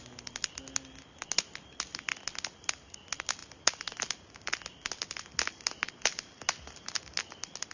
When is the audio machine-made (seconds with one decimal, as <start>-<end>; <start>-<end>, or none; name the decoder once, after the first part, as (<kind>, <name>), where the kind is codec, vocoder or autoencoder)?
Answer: none